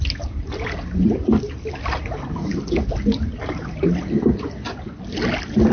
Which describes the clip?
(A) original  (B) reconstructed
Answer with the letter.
A